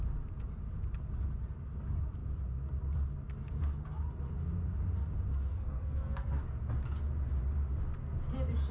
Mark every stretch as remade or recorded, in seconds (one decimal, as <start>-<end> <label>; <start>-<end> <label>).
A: 0.0-5.5 recorded; 5.5-6.4 remade; 6.4-8.7 recorded